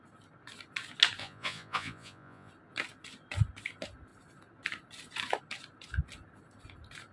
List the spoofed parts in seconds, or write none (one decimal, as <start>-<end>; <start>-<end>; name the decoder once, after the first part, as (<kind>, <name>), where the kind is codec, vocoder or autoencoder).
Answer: 1.2-2.5 (vocoder, Vocos)